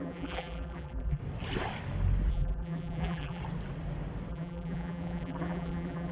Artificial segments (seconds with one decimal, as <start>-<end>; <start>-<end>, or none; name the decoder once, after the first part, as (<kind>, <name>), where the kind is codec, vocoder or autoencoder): 0.0-1.2 (vocoder, BigVGAN v2); 2.3-3.4; 4.3-6.1

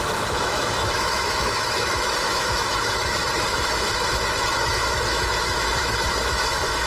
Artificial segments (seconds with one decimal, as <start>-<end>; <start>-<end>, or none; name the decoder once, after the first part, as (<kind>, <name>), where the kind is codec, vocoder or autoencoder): 0.0-6.9 (autoencoder, DAC-VAE)